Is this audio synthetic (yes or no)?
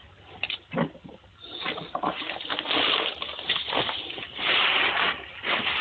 no